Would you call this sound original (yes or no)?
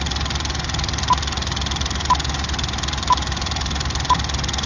yes